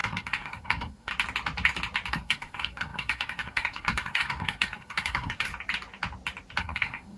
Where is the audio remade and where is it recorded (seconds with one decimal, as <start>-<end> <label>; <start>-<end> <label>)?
0.0-1.1 remade; 1.1-2.1 recorded; 2.1-5.5 remade; 5.5-6.6 recorded; 6.6-7.2 remade